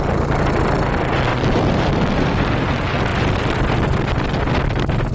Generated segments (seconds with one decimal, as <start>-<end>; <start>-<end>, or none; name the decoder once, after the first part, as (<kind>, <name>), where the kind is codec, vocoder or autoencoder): 1.3-1.8 (vocoder, BigVGAN v2); 3.1-4.1